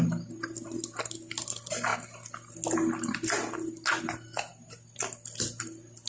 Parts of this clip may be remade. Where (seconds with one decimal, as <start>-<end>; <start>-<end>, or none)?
none